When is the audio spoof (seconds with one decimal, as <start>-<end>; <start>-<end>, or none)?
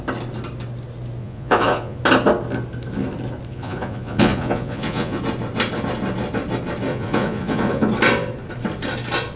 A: 1.2-2.0; 3.5-5.2; 6.9-7.9